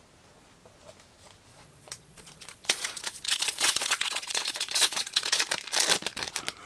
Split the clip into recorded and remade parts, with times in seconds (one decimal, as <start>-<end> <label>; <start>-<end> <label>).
0.0-1.5 recorded; 1.5-5.4 remade; 5.4-6.7 recorded